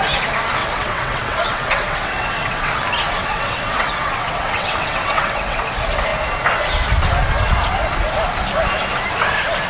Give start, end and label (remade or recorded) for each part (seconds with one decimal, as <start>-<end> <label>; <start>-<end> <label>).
0.0-0.6 recorded; 0.6-2.7 remade; 2.7-3.2 recorded; 3.2-5.6 remade; 5.6-9.7 recorded